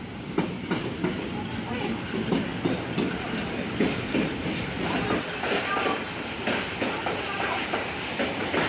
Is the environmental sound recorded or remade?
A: remade